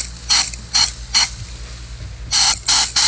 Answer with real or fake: real